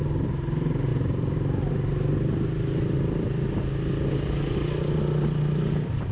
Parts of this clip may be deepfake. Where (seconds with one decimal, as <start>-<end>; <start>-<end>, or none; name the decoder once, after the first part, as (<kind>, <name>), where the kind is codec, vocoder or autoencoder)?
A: none

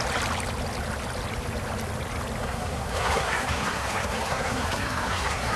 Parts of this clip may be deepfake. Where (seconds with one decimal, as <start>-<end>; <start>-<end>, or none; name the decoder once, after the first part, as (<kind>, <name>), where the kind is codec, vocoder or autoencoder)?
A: 2.4-5.6 (codec, SNAC)

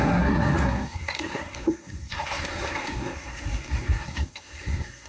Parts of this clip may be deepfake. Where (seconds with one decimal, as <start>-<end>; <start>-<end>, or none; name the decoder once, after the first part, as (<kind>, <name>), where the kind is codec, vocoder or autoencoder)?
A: 0.0-5.1 (codec, SNAC)

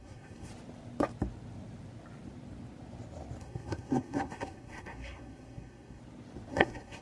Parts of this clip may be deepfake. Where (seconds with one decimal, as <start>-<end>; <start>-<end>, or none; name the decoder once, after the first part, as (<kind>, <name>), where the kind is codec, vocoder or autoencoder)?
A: 0.0-0.5 (codec, SNAC); 3.4-6.0; 6.5-7.0